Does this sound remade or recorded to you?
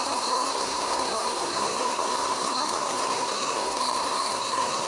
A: remade